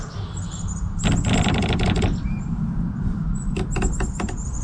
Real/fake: real